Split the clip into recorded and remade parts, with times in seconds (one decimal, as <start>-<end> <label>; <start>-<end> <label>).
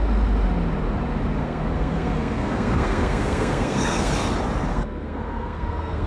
0.0-1.4 recorded; 1.4-4.1 remade; 4.1-4.7 recorded; 4.7-6.1 remade